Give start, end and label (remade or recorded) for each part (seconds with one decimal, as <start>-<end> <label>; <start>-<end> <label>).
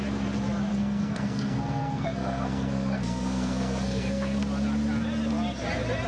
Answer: 0.0-0.7 recorded; 0.7-4.4 remade; 4.4-6.1 recorded